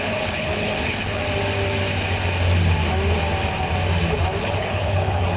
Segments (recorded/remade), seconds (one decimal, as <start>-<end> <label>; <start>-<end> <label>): 0.0-1.2 remade; 1.2-4.4 recorded; 4.4-5.4 remade